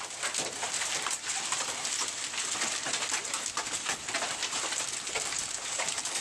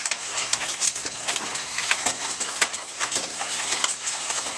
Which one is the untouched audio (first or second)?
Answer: first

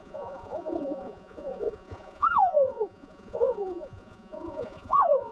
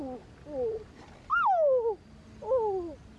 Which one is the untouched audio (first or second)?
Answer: second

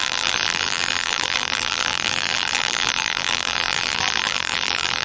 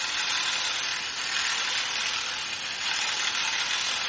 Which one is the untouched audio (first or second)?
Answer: second